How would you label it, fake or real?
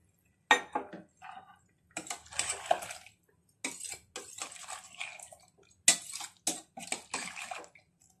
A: real